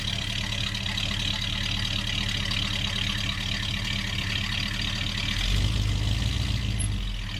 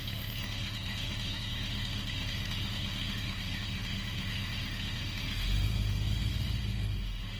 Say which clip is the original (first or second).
first